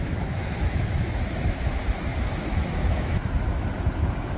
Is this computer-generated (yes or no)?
yes